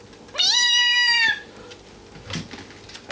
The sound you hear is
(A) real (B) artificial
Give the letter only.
A